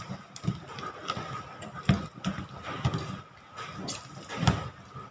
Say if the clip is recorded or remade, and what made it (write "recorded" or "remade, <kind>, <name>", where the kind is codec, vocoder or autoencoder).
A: recorded